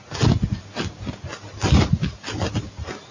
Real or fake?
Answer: real